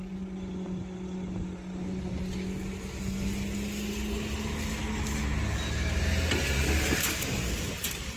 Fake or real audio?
real